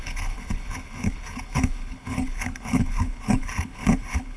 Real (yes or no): no